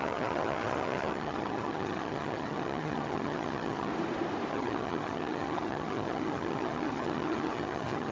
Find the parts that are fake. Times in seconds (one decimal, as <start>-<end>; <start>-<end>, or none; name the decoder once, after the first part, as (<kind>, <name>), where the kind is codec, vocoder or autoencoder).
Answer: 0.0-3.9 (vocoder, HiFi-GAN); 4.5-8.1